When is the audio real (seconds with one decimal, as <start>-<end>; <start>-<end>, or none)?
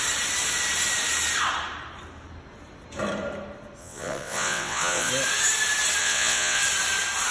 0.0-3.8; 5.1-6.0; 6.6-7.3